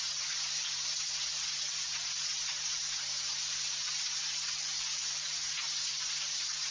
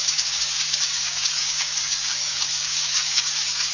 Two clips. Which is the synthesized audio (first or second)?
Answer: second